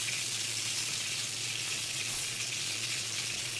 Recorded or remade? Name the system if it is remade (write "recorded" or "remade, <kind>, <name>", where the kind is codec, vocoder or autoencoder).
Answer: remade, vocoder, Vocos